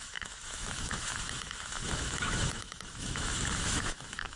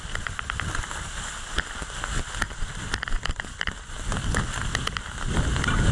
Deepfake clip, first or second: first